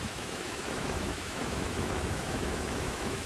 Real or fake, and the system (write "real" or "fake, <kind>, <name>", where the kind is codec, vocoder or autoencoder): fake, autoencoder, DAC-VAE